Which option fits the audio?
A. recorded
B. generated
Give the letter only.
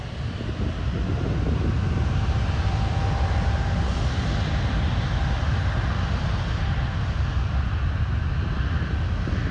A